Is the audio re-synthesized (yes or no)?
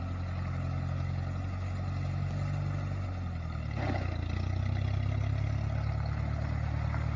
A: no